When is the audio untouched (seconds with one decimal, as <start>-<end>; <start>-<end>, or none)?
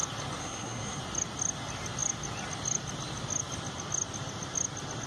0.0-0.4; 1.0-5.1